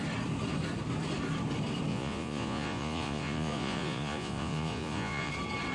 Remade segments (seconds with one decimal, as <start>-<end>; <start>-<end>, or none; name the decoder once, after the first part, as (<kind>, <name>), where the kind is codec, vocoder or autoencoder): 1.9-5.3 (vocoder, Vocos)